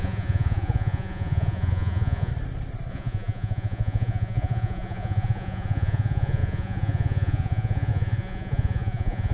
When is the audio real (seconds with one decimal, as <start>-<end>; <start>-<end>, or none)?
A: 2.3-2.9